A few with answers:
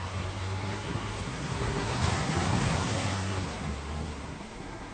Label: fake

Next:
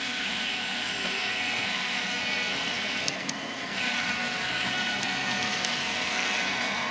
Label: fake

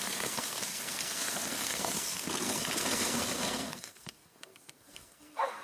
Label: fake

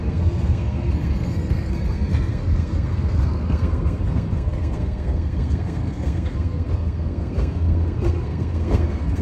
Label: fake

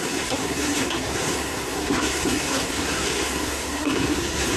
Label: fake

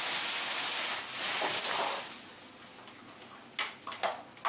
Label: real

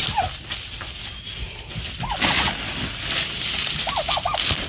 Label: real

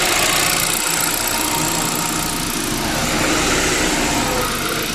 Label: real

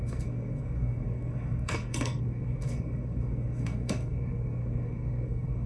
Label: fake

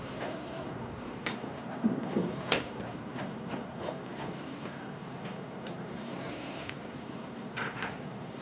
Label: fake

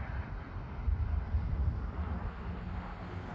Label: real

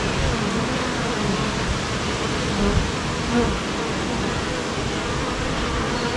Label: real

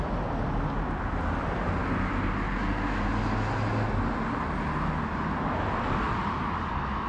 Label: real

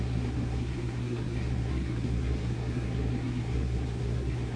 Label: fake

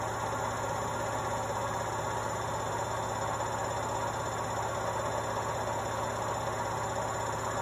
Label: real